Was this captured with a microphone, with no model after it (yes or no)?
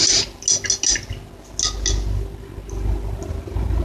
yes